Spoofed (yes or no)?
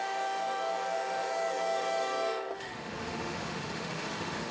yes